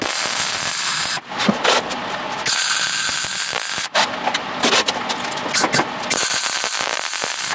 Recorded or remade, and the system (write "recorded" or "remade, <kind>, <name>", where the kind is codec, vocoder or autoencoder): recorded